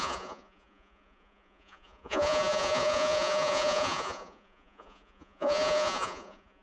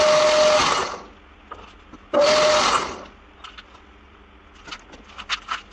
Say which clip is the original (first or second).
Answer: second